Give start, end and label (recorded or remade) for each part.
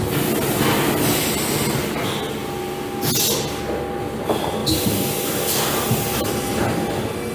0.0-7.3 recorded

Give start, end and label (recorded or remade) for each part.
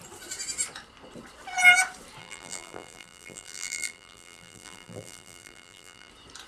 0.0-2.2 recorded; 2.2-6.1 remade; 6.1-6.5 recorded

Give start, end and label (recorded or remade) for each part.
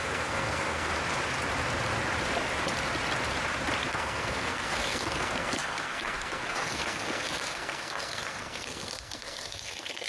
0.0-0.9 remade; 0.9-3.9 recorded; 3.9-10.1 remade